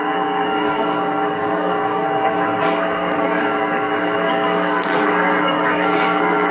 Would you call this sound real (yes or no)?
no